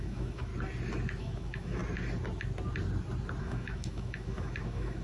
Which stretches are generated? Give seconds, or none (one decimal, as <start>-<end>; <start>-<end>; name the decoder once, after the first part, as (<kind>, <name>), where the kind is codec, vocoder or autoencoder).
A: 0.0-0.5 (autoencoder, DAC-VAE); 1.2-1.8; 3.4-5.0